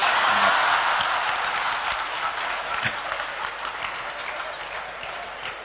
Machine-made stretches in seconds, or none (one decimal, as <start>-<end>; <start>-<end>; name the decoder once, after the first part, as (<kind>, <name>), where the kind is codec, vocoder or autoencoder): none